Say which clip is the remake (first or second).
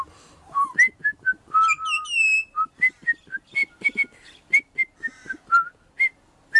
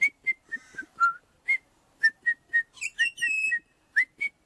second